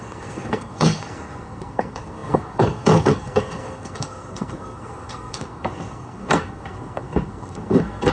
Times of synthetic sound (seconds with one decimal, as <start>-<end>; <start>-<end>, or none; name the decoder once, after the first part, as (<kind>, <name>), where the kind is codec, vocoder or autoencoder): 0.0-8.1 (codec, SNAC)